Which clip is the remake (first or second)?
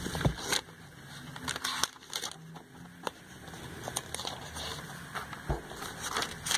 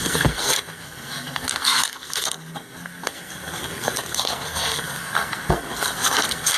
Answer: second